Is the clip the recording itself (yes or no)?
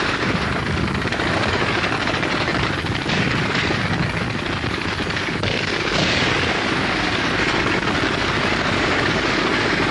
no